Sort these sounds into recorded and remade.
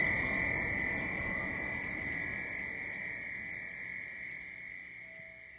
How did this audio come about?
recorded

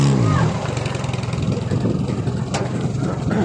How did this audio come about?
recorded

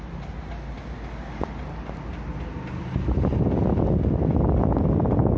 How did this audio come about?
recorded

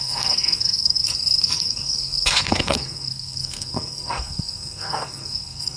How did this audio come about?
remade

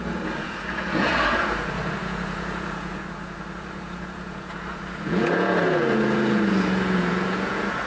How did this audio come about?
remade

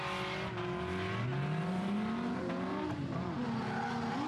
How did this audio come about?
recorded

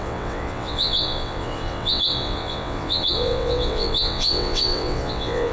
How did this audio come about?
remade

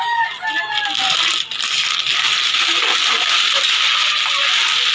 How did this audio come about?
recorded